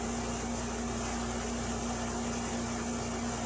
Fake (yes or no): no